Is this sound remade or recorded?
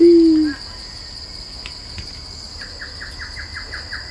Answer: recorded